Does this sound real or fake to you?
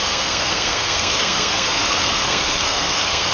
fake